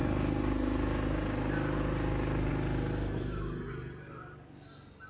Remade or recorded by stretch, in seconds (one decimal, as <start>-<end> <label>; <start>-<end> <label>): 0.0-5.1 recorded